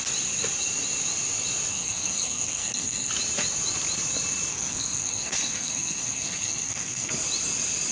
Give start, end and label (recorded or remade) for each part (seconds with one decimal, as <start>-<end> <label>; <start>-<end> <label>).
0.0-1.7 recorded; 1.7-3.1 remade; 3.1-4.5 recorded; 4.5-7.1 remade; 7.1-7.9 recorded